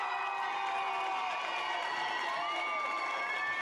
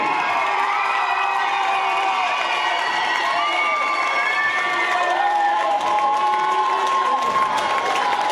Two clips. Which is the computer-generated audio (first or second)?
second